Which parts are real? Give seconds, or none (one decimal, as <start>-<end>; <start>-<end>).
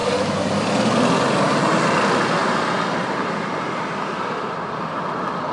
0.7-2.4